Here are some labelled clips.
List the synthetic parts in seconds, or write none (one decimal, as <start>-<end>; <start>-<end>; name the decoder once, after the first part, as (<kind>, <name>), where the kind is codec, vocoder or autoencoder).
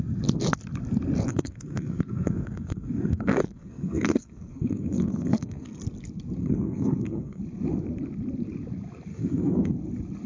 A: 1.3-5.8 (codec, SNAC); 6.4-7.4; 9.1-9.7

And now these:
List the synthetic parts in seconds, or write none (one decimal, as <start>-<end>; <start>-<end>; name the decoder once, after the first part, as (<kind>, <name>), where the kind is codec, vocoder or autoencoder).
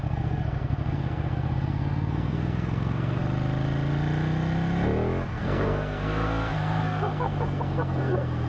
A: 0.0-3.2 (codec, SNAC); 5.3-8.5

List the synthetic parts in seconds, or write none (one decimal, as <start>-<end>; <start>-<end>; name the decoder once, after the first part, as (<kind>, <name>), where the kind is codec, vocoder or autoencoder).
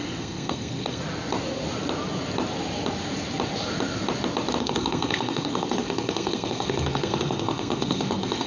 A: 0.0-1.0 (codec, SNAC); 4.6-8.5